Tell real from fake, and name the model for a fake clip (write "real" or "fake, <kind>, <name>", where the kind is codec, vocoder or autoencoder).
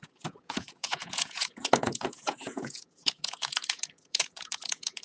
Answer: fake, vocoder, Vocos